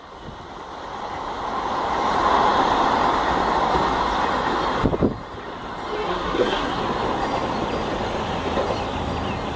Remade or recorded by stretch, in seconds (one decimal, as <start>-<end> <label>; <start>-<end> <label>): 0.0-6.1 recorded; 6.1-6.8 remade; 6.8-9.6 recorded